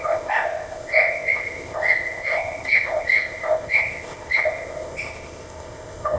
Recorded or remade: remade